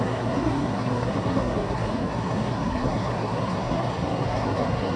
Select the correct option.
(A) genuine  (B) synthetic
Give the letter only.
B